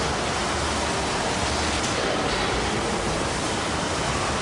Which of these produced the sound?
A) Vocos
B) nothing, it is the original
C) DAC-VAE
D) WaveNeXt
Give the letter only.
B